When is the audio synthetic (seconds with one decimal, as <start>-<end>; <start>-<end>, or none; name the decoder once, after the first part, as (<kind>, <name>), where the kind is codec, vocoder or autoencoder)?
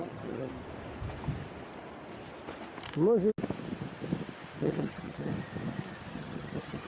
0.0-0.5 (vocoder, HiFi-GAN); 4.6-5.3; 6.1-6.9